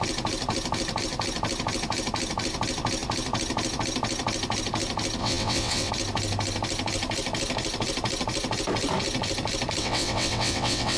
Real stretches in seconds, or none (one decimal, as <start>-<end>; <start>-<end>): 0.0-5.2; 5.9-9.8